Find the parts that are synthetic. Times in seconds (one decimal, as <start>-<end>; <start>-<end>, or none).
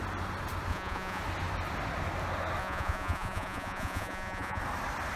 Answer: 0.7-1.2; 2.6-4.6